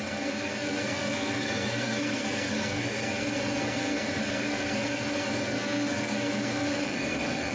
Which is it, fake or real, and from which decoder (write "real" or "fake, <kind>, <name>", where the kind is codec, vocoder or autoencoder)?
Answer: fake, codec, SNAC